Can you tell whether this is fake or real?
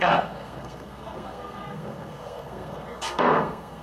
fake